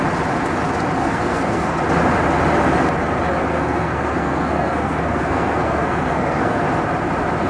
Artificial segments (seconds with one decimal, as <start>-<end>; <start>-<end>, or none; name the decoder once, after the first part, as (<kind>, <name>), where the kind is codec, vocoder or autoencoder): 1.0-1.8 (codec, SNAC); 3.5-6.6